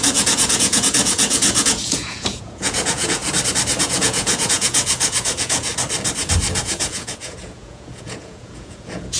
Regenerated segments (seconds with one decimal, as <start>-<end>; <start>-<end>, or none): 0.0-3.2; 3.8-5.7; 6.6-9.2